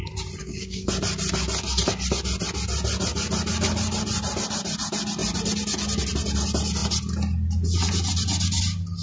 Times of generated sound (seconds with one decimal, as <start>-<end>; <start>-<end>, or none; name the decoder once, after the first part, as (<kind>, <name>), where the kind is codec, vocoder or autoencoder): 0.4-0.9 (codec, DAC)

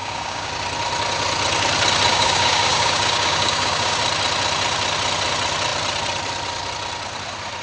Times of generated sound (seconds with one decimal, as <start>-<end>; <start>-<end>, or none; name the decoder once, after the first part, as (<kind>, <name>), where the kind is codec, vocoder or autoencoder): 0.0-0.5 (codec, DAC); 2.1-4.0

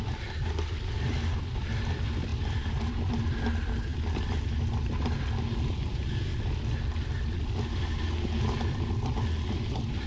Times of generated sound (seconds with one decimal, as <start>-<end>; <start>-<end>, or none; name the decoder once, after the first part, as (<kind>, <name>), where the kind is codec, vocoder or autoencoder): none

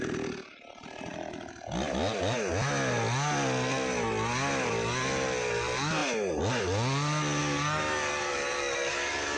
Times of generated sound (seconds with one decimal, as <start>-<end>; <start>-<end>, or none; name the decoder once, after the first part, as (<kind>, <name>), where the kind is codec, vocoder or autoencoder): 7.4-9.4 (codec, DAC)

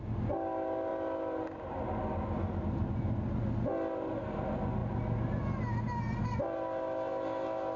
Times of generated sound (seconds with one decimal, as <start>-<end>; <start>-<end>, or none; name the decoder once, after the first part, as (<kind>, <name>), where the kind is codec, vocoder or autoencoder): none

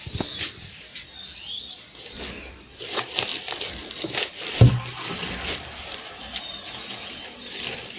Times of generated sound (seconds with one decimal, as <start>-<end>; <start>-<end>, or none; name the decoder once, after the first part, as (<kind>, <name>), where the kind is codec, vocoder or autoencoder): none

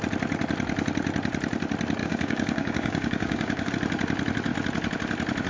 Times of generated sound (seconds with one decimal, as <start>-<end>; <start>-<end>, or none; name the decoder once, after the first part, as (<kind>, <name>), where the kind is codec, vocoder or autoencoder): 2.0-3.7 (codec, DAC)

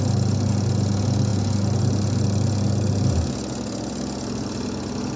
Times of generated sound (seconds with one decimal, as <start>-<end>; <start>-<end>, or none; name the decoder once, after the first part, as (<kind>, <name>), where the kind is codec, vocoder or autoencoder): none